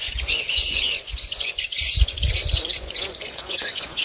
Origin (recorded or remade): remade